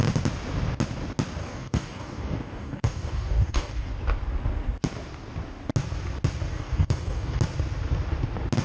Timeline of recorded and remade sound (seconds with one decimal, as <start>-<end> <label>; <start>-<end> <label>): 0.0-1.4 recorded; 1.4-3.9 remade; 3.9-6.5 recorded; 6.5-7.4 remade; 7.4-8.6 recorded